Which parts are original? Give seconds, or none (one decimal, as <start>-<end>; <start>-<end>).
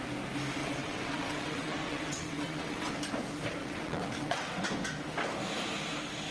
0.0-0.6; 2.9-3.6; 4.6-6.3